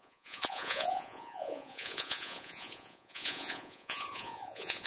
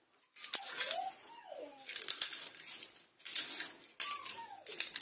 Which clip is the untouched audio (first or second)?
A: second